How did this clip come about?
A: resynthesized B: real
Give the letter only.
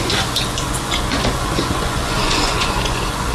A